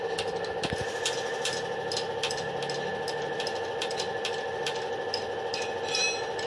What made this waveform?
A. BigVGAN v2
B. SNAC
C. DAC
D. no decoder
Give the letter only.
D